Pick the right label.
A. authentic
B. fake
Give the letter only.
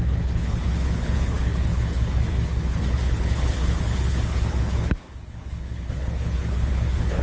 B